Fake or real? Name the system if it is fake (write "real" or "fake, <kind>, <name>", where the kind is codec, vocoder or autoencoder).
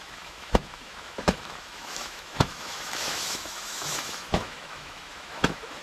fake, autoencoder, DAC-VAE